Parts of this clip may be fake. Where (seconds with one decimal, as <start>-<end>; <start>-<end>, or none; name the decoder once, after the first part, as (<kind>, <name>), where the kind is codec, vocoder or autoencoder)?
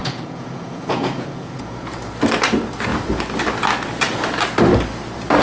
0.0-2.0 (vocoder, Vocos)